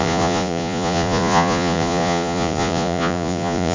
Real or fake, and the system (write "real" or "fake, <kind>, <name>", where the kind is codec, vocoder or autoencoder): fake, vocoder, Vocos